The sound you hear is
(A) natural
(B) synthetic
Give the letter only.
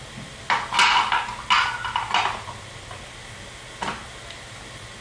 A